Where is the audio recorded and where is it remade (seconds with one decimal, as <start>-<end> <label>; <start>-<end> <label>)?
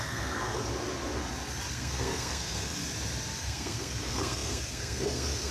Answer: 0.0-0.6 remade; 0.6-1.7 recorded; 1.7-2.8 remade; 2.8-3.4 recorded; 3.4-5.5 remade